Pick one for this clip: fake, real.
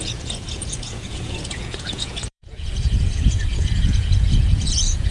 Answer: fake